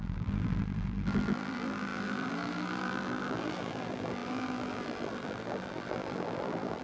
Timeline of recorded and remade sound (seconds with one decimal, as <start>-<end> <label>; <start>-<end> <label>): 0.0-6.8 remade